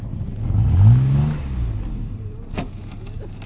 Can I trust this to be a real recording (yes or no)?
yes